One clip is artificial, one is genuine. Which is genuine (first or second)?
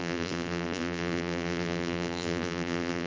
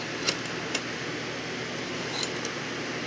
second